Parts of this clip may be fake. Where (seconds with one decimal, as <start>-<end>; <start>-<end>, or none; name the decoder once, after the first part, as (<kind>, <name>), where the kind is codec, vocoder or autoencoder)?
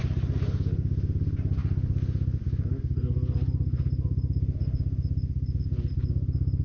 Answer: none